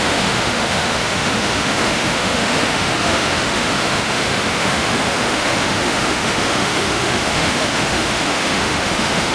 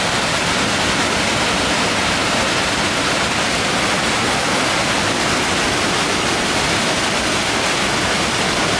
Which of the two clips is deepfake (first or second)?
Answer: first